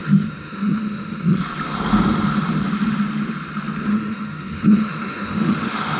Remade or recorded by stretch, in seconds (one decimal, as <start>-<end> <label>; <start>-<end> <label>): 0.0-1.4 remade; 1.4-3.9 recorded; 3.9-6.0 remade